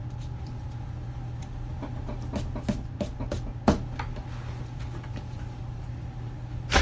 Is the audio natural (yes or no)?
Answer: yes